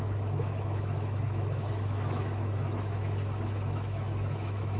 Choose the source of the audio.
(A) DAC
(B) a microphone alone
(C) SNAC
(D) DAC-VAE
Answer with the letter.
D